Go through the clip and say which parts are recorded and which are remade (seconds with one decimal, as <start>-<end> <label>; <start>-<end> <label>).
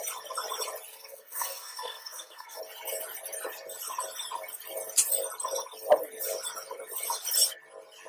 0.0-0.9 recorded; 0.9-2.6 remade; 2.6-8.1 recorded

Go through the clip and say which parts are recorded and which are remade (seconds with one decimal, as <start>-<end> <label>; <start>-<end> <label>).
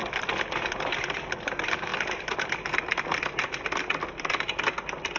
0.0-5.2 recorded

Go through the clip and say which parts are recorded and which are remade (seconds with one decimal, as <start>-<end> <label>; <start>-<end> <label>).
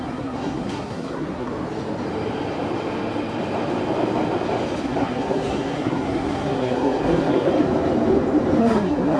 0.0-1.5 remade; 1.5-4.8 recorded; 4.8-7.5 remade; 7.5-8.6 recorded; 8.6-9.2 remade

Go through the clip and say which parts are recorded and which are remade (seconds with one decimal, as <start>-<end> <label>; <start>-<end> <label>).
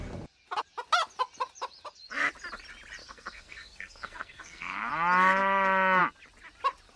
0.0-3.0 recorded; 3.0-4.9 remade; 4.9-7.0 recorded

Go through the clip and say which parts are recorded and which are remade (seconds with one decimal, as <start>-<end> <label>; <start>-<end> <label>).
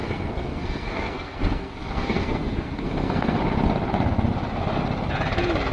0.0-3.4 remade; 3.4-5.7 recorded